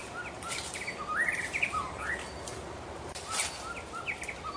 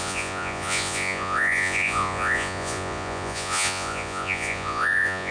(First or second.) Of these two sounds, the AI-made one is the second